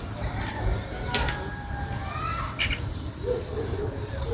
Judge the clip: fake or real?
real